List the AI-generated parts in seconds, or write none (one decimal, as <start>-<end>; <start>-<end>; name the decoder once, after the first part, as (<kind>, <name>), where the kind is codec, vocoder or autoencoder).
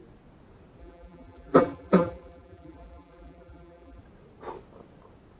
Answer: 0.8-4.0 (vocoder, BigVGAN v2)